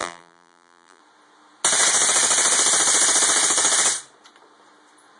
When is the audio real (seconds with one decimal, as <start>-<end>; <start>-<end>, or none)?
1.0-5.2